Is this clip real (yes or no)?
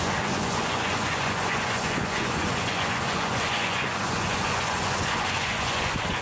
no